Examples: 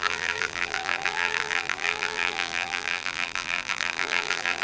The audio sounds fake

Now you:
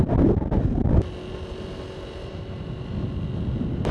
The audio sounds real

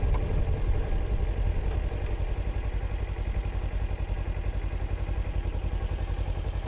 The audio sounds real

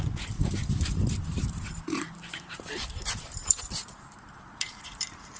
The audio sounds fake